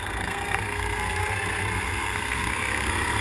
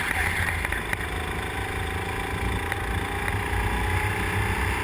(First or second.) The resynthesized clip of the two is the first